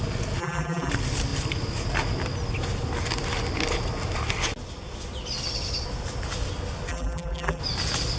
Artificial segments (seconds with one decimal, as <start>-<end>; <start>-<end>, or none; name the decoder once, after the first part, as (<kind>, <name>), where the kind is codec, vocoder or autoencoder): 0.4-0.9 (vocoder, BigVGAN v2); 6.9-7.6

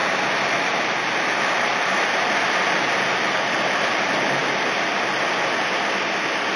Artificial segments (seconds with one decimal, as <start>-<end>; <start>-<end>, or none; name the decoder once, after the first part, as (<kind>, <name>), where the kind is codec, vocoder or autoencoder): none

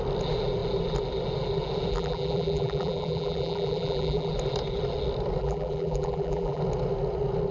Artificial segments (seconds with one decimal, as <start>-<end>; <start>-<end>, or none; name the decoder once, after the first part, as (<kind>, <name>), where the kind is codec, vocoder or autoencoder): 1.9-4.3 (vocoder, BigVGAN v2); 5.4-6.6

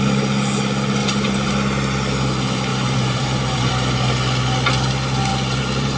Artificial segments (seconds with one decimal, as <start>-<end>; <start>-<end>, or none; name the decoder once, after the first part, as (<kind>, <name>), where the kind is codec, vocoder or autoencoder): 1.0-1.5 (vocoder, BigVGAN v2); 2.7-3.7; 5.3-6.0

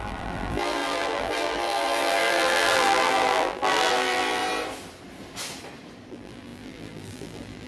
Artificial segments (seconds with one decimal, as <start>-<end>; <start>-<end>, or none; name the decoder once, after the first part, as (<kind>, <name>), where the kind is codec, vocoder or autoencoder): 0.0-4.4 (vocoder, BigVGAN v2); 6.1-7.7

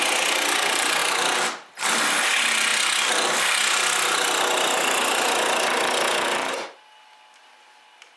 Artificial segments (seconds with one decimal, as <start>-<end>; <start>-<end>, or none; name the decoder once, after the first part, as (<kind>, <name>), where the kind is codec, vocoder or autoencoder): 1.0-1.7 (vocoder, BigVGAN v2)